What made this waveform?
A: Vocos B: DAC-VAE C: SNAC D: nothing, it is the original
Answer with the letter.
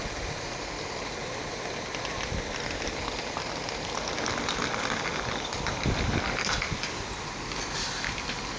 D